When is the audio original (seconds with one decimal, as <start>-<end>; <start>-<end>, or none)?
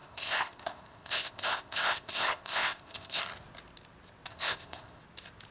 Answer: 3.2-4.3; 5.0-5.5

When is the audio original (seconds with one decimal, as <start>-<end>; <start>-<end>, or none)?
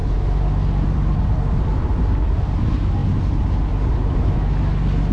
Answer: 0.0-5.1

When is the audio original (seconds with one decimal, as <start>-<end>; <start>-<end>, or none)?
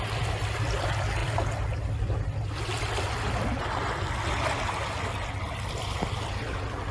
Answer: 0.0-6.9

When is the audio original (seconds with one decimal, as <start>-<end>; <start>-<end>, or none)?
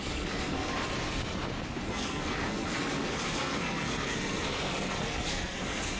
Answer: 0.7-1.9